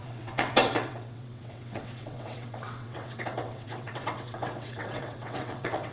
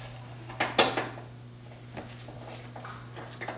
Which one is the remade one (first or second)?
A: first